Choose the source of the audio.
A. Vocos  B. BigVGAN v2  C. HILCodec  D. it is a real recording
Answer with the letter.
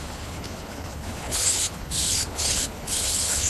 C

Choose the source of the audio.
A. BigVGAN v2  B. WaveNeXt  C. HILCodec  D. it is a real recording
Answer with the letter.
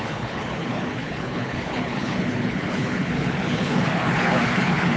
C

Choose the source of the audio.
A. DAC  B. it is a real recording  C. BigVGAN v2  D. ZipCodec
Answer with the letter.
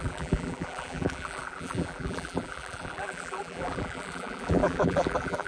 C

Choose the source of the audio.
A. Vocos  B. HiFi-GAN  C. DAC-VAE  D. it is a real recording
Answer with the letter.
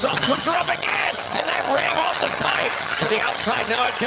B